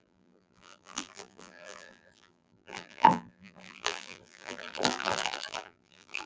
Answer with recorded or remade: remade